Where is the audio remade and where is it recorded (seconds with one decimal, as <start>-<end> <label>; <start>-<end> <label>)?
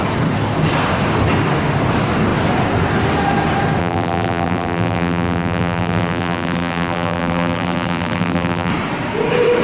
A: 0.0-3.8 recorded; 3.8-8.7 remade; 8.7-9.6 recorded